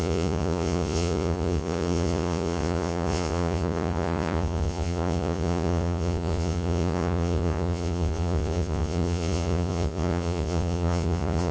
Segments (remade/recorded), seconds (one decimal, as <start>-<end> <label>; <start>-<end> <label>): 0.0-11.5 remade